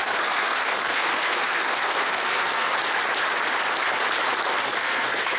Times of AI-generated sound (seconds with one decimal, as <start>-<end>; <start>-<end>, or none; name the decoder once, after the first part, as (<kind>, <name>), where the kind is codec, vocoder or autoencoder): 0.0-2.7 (codec, SNAC); 4.8-5.4